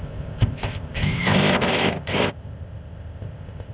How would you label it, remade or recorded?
remade